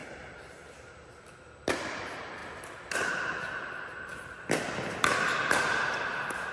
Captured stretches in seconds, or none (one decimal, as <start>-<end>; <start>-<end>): 0.0-6.5